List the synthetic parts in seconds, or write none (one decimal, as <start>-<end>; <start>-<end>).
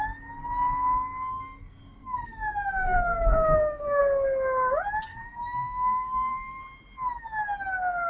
1.3-4.0; 5.1-6.6